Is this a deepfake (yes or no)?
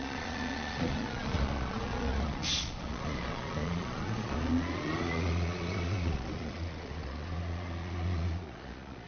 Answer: yes